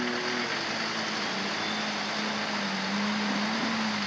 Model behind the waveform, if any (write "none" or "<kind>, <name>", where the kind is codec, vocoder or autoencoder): none